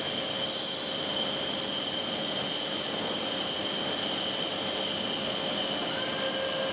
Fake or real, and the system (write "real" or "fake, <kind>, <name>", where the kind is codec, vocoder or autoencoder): real